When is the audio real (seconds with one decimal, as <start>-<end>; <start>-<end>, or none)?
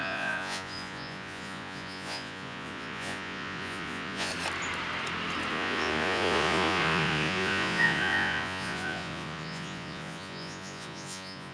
4.3-5.5